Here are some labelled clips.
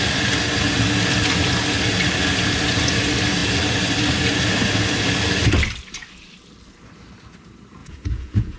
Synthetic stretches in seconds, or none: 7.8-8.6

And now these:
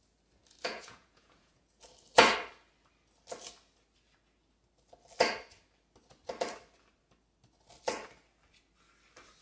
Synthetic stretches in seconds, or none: 0.6-1.8

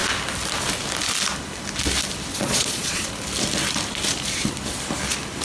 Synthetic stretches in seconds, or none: 2.3-3.1

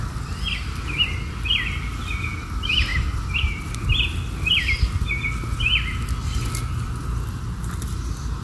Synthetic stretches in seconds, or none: none

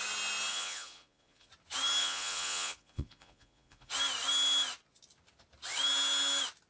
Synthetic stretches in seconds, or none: 0.5-1.5; 2.0-3.9

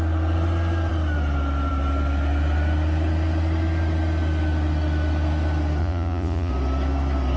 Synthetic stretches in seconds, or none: 5.8-6.5